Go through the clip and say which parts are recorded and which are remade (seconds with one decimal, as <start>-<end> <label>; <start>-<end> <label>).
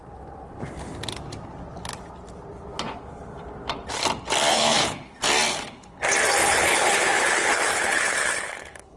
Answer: 0.0-4.5 recorded; 4.5-5.1 remade; 5.1-5.5 recorded; 5.5-6.0 remade; 6.0-6.4 recorded; 6.4-9.0 remade